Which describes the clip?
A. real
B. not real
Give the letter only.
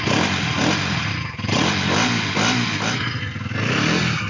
A